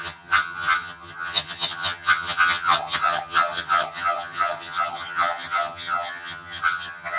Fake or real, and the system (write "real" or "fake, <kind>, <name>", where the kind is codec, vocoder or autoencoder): fake, vocoder, HiFi-GAN